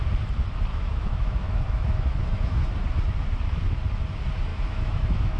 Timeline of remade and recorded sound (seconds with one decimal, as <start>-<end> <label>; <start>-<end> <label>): 0.0-0.7 recorded; 0.7-2.6 remade; 2.6-4.5 recorded; 4.5-5.4 remade